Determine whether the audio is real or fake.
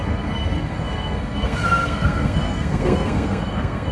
fake